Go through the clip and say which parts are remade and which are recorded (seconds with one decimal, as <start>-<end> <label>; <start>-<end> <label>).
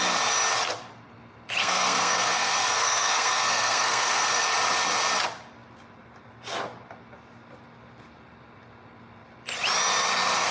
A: 0.0-1.6 recorded; 1.6-4.4 remade; 4.4-10.5 recorded